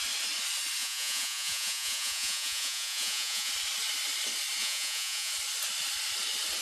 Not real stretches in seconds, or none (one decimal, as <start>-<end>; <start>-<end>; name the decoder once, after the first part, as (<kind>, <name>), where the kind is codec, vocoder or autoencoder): 0.8-3.5 (vocoder, Vocos); 4.6-5.3